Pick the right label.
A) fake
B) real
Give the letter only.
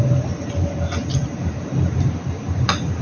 B